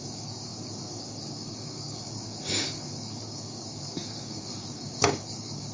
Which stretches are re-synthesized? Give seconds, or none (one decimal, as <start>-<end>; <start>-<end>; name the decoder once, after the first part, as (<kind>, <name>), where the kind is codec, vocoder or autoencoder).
0.0-5.7 (codec, DAC)